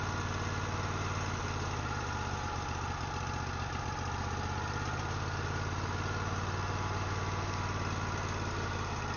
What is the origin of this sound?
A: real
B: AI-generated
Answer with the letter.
A